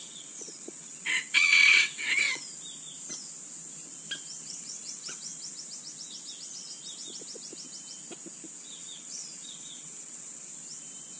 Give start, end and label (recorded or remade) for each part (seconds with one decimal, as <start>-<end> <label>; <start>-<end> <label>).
0.0-2.4 remade; 2.4-4.4 recorded; 4.4-5.3 remade; 5.3-8.6 recorded; 8.6-10.5 remade; 10.5-11.2 recorded

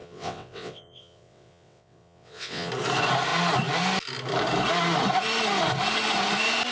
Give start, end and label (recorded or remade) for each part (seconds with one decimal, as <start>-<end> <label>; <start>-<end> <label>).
0.0-2.7 remade; 2.7-6.7 recorded

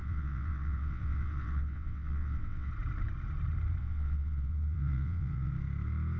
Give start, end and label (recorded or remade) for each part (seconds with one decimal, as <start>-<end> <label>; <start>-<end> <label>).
0.0-2.7 remade; 2.7-3.8 recorded; 3.8-5.5 remade; 5.5-6.2 recorded

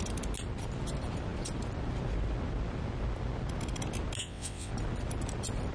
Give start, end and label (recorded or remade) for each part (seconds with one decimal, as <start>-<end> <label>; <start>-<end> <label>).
0.0-4.2 recorded; 4.2-4.7 remade; 4.7-5.7 recorded

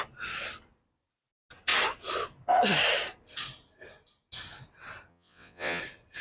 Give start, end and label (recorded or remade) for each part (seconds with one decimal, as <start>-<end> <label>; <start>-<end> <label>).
0.0-5.1 recorded; 5.1-5.8 remade; 5.8-6.2 recorded

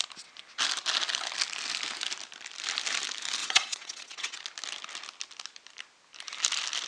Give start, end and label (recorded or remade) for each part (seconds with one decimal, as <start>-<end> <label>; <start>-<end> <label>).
0.0-3.4 recorded; 3.4-4.4 remade; 4.4-6.9 recorded